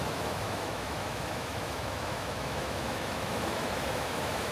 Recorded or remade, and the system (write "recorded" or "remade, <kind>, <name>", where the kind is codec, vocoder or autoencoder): remade, autoencoder, DAC-VAE